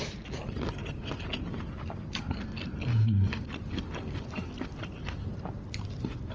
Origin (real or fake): real